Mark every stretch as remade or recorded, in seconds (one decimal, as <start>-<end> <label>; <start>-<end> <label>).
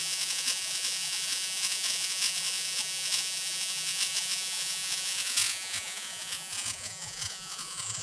0.0-8.0 remade